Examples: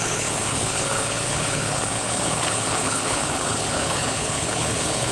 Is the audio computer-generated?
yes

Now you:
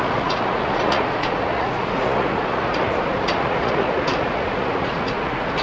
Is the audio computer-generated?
yes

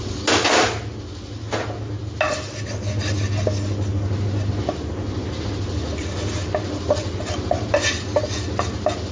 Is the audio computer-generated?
no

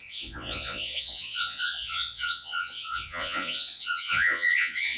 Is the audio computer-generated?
yes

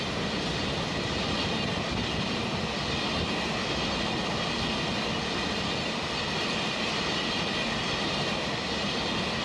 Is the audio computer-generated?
no